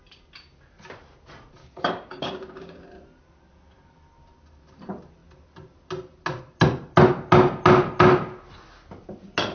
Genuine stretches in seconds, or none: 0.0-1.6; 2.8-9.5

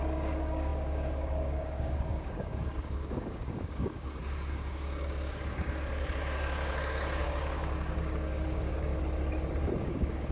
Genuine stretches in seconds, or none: 8.9-9.8

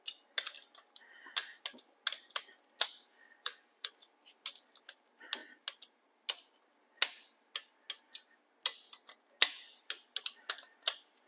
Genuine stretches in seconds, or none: 0.0-3.4; 3.9-11.3

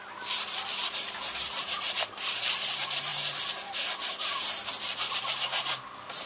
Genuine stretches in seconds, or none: 0.0-6.3

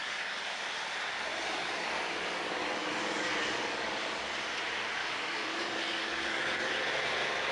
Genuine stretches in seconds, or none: 0.6-1.3; 4.2-5.0; 6.7-7.5

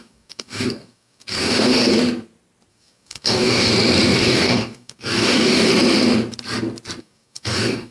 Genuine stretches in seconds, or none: 1.9-2.7; 3.7-4.2; 5.7-7.0